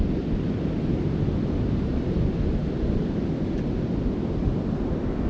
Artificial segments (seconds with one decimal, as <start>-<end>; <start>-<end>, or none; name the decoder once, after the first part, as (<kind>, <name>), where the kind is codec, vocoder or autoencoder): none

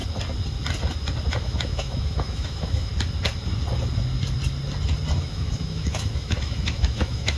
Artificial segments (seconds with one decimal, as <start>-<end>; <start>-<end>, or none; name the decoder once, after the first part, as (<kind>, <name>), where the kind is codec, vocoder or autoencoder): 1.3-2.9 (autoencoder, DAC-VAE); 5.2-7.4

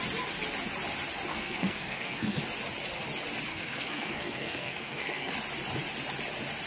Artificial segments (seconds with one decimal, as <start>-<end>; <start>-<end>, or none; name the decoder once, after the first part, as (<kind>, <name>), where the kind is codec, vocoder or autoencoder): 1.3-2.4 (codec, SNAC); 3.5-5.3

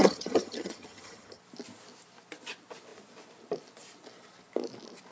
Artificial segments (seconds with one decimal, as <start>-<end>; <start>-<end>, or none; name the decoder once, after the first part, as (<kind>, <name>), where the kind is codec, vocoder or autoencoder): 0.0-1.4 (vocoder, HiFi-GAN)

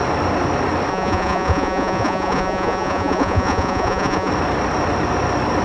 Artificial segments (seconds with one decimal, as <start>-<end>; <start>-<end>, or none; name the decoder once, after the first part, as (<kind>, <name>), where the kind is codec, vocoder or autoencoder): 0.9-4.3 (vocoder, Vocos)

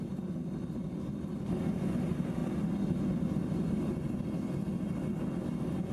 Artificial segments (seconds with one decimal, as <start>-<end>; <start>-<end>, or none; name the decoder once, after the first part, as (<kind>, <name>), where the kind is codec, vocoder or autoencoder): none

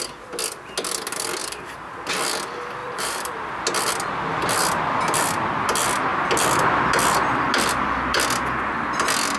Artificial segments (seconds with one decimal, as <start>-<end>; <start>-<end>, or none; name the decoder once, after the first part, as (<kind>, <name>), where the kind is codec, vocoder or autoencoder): 1.4-1.9 (vocoder, BigVGAN v2); 2.8-3.5